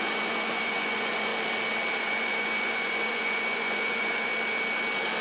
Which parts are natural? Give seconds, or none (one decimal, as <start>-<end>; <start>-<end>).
1.3-2.0; 4.3-5.2